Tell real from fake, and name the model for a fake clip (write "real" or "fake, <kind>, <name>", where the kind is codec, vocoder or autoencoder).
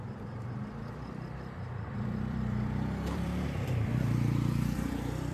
fake, vocoder, BigVGAN v2